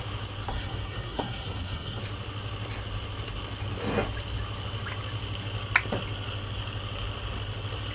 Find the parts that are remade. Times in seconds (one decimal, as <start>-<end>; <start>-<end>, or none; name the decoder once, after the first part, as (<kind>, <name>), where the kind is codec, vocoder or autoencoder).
0.5-2.0 (codec, SNAC)